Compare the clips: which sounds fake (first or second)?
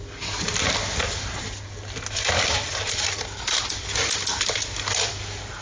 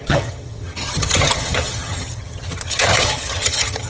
second